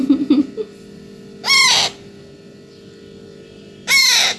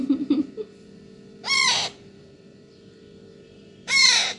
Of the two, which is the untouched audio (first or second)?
first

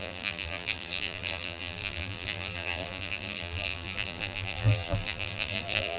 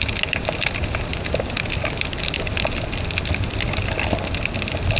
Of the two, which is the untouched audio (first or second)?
second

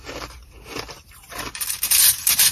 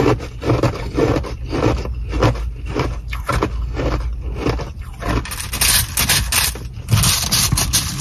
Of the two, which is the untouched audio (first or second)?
second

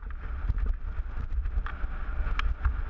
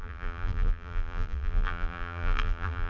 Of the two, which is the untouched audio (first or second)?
first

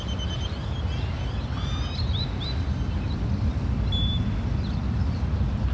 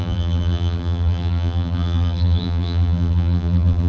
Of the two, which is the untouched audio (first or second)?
first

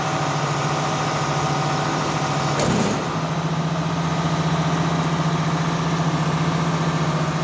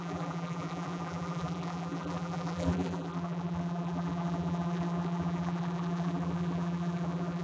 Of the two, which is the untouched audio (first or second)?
first